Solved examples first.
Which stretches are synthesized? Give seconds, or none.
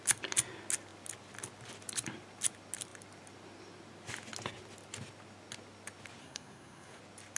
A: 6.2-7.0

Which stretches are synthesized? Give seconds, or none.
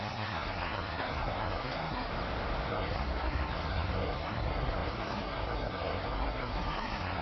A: 0.0-2.1; 2.7-7.2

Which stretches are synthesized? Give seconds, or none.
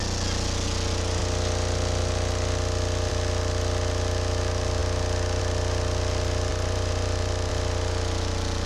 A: 6.5-7.5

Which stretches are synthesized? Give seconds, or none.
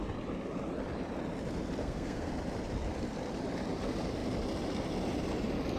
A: 1.8-2.3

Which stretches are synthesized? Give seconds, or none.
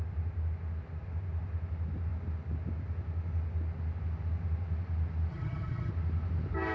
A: 5.3-5.9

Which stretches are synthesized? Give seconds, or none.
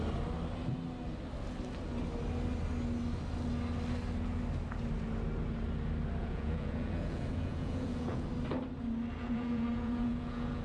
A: 6.2-8.3; 9.2-10.6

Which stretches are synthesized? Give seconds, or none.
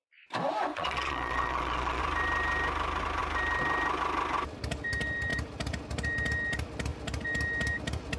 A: 0.7-2.0